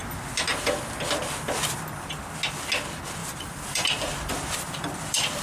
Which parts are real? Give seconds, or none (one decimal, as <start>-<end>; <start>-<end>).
0.0-3.2